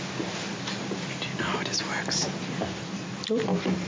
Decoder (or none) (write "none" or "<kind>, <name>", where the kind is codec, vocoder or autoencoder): none